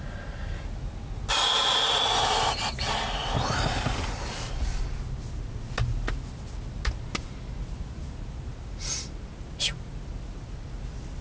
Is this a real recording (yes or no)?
yes